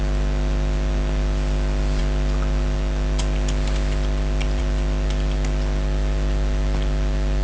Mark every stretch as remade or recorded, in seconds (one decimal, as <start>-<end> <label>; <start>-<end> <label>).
0.0-7.4 recorded